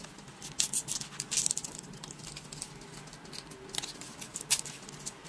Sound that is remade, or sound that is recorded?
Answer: recorded